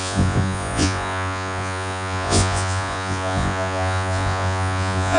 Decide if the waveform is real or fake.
fake